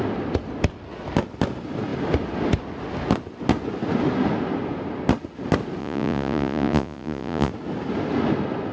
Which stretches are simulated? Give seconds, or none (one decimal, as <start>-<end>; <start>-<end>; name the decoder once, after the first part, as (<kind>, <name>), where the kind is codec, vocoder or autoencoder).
5.8-7.5 (vocoder, Vocos)